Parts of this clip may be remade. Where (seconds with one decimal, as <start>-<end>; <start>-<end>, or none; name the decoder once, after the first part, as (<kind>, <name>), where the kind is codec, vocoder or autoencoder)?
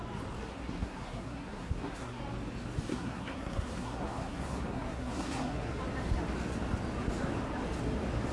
0.5-2.2 (codec, SNAC); 2.9-5.8